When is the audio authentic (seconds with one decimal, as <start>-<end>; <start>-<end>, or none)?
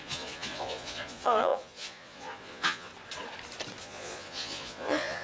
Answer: 2.9-3.8